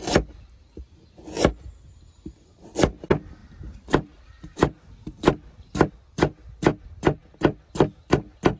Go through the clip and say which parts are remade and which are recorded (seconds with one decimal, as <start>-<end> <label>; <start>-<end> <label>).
0.0-3.4 recorded; 3.4-5.9 remade; 5.9-8.6 recorded